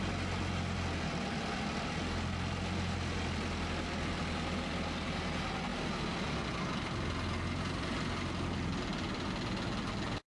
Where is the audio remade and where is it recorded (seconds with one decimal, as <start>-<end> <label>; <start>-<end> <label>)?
0.0-10.3 recorded

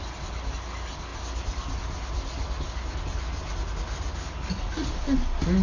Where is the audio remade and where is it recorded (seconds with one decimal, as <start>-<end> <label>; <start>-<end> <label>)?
0.0-5.6 recorded

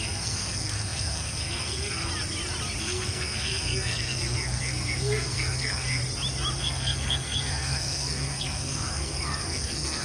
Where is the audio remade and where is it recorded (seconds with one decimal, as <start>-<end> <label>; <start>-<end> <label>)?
0.0-2.1 remade; 2.1-2.8 recorded; 2.8-6.0 remade; 6.0-6.6 recorded; 6.6-10.0 remade

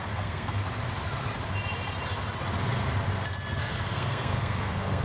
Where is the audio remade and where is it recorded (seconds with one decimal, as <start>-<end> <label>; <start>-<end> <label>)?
0.0-0.6 remade; 0.6-3.6 recorded; 3.6-5.0 remade

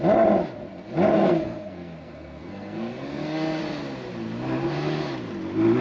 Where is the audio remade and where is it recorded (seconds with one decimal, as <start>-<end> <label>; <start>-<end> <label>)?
0.0-1.1 recorded; 1.1-3.6 remade; 3.6-5.8 recorded

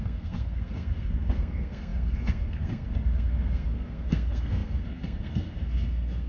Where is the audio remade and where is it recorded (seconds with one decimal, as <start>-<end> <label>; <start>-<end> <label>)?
0.0-6.3 remade